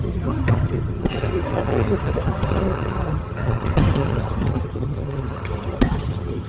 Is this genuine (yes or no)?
no